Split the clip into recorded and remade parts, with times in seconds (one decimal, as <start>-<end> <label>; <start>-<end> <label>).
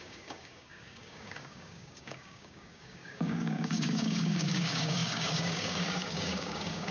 0.0-6.9 remade